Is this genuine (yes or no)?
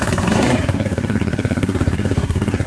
no